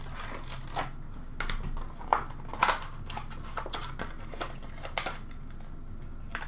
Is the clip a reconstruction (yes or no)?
no